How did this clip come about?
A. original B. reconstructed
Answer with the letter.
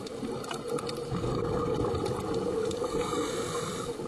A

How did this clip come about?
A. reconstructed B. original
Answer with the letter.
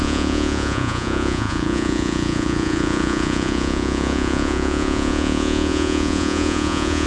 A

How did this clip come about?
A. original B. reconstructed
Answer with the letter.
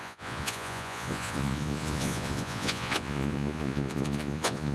B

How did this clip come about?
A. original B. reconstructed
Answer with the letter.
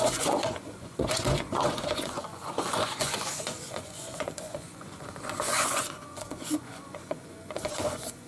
B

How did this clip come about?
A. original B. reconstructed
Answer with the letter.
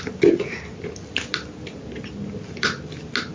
A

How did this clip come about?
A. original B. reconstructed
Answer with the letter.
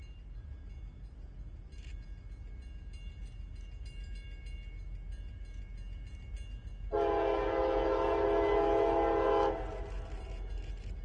A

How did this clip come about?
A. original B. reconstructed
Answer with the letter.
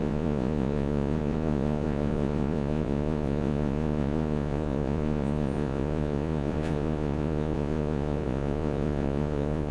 B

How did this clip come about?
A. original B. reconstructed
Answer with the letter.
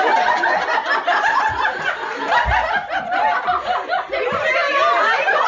A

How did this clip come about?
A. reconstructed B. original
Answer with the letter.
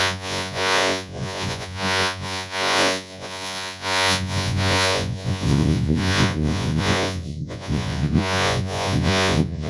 A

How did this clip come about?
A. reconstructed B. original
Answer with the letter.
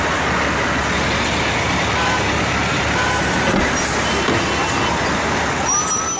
B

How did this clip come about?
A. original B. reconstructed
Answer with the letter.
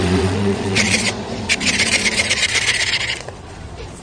B